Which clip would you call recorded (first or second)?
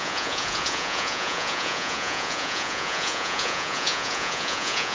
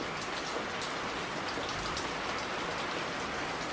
second